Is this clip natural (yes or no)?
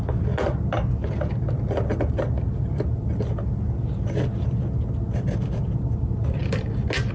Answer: yes